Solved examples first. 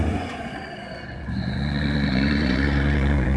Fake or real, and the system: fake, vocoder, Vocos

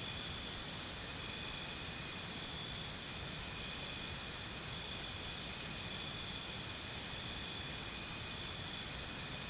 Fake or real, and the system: real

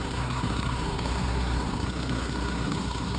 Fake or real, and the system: fake, codec, SNAC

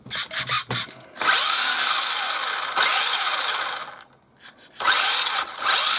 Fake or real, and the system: real